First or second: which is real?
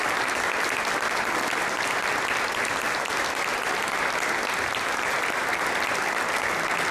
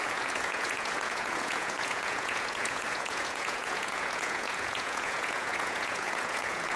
first